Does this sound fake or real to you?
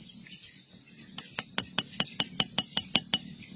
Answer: fake